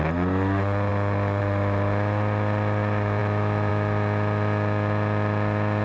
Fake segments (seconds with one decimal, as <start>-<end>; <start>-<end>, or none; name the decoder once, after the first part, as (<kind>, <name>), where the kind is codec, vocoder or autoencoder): none